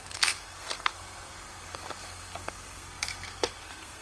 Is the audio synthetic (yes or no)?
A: yes